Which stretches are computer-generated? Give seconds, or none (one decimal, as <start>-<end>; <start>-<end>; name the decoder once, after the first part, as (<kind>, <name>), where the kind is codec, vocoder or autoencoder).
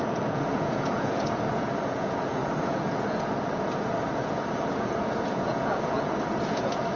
0.0-7.0 (vocoder, Vocos)